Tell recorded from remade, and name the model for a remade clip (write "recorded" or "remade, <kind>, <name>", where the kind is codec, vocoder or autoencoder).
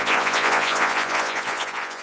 remade, vocoder, Vocos